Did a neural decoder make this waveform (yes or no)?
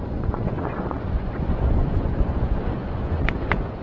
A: yes